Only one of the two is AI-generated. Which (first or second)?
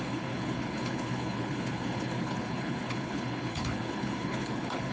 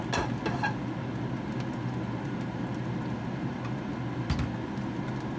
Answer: first